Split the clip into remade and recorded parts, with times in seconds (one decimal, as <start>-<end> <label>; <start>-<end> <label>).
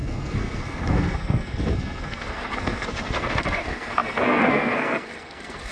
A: 0.0-5.7 remade